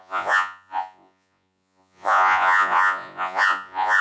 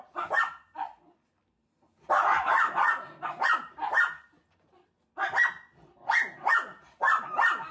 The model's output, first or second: first